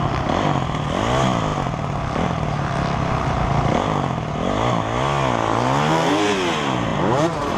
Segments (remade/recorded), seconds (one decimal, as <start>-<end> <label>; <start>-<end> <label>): 0.0-7.6 recorded